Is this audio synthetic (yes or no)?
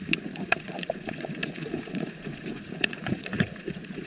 yes